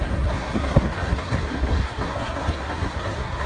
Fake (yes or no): yes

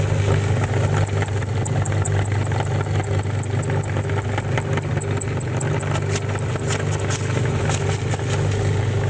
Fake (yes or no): no